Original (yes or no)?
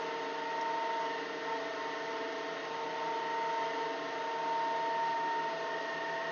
yes